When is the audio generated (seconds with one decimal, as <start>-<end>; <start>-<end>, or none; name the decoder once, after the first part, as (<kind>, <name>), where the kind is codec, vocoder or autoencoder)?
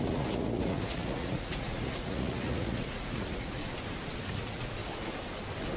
0.0-3.6 (vocoder, Vocos); 4.3-4.8